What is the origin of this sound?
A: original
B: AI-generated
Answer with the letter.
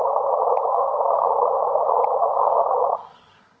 B